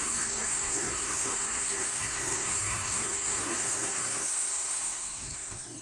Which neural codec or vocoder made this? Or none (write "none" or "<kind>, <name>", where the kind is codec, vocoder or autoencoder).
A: codec, SNAC